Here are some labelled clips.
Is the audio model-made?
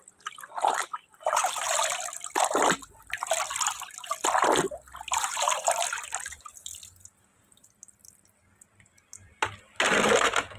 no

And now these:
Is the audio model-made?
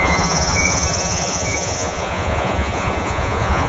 yes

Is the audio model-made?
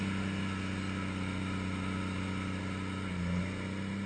no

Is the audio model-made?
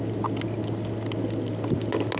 no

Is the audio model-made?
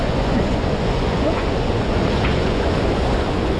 yes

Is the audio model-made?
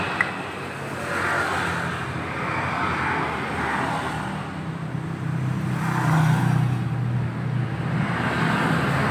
no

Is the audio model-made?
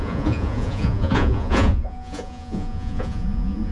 yes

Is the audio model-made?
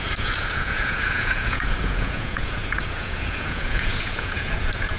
yes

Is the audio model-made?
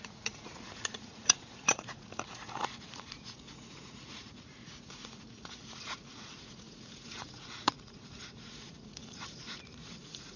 yes